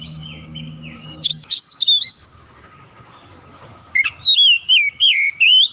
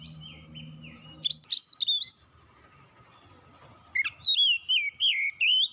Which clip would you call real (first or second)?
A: second